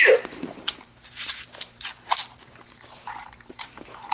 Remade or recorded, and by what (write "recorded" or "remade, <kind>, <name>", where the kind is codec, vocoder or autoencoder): remade, vocoder, BigVGAN v2